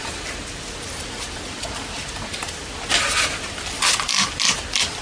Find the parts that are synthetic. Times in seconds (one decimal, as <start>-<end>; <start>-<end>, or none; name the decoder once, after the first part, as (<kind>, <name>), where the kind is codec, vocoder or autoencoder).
none

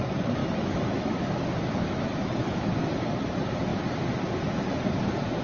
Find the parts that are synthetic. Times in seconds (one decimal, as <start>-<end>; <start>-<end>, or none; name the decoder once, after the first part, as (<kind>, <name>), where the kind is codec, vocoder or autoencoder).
0.4-2.7 (autoencoder, DAC-VAE)

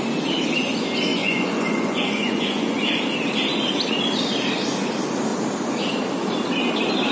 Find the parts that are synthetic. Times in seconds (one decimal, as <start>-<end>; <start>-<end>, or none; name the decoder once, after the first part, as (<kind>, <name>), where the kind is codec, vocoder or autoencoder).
1.1-2.8 (vocoder, Vocos)

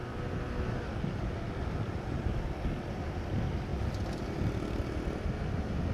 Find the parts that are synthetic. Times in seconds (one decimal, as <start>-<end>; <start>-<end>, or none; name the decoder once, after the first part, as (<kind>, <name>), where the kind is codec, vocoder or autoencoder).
none

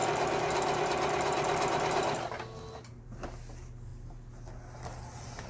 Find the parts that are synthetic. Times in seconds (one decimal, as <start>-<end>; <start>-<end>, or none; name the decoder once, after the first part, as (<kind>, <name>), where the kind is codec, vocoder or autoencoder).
none

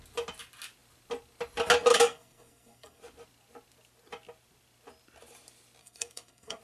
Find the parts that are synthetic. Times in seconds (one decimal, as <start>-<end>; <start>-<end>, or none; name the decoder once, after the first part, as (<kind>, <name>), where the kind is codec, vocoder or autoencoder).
1.9-3.0 (codec, SNAC); 5.8-6.6

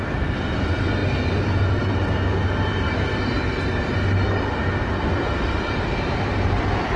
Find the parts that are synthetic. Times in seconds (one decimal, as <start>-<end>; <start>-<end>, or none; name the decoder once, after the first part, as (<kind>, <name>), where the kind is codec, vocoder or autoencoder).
5.9-6.6 (vocoder, BigVGAN v2)